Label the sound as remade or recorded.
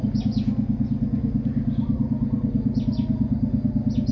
recorded